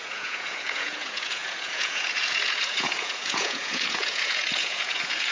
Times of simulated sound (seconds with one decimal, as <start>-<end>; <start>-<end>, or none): 0.0-5.3